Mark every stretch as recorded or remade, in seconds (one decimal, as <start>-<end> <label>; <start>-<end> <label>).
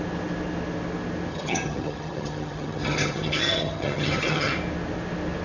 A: 0.0-1.3 recorded; 1.3-4.5 remade; 4.5-5.4 recorded